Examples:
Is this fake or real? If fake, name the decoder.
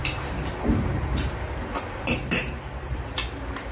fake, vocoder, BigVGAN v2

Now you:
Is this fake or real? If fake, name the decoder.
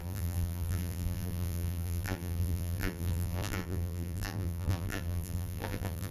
fake, vocoder, BigVGAN v2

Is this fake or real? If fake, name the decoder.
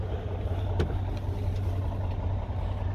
real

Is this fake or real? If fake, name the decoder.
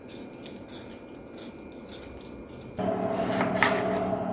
real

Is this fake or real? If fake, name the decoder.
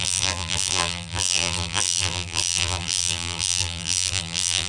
fake, vocoder, BigVGAN v2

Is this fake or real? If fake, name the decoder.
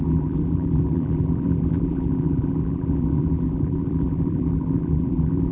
fake, vocoder, BigVGAN v2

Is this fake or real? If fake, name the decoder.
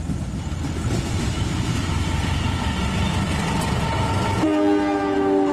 real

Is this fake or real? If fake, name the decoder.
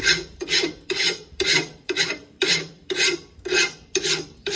fake, vocoder, BigVGAN v2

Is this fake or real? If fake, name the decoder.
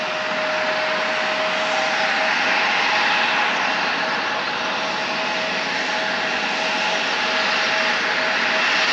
real